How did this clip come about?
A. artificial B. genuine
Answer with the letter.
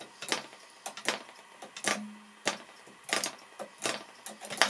B